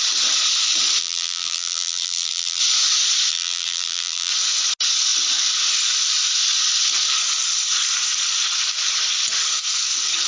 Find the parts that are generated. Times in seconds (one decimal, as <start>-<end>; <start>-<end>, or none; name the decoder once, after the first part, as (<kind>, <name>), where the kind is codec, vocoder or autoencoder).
1.0-2.6 (vocoder, BigVGAN v2); 3.3-4.3